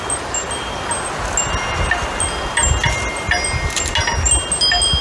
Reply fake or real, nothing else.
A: real